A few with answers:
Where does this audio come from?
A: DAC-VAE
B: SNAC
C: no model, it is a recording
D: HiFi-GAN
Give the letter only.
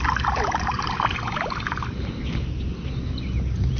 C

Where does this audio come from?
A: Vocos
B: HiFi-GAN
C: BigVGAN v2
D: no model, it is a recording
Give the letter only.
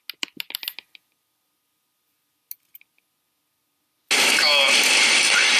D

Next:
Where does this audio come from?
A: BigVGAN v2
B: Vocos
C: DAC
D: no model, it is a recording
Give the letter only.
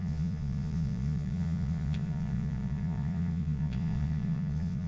B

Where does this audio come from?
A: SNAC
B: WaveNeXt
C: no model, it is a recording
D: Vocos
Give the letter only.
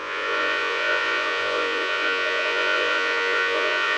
D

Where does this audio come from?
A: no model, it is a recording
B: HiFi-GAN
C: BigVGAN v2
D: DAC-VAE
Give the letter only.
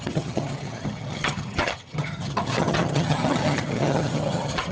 B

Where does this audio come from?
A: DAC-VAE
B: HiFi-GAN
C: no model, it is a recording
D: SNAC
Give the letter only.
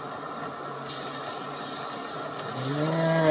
C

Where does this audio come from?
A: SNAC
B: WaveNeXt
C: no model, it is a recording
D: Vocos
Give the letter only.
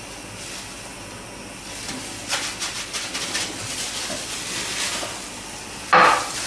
C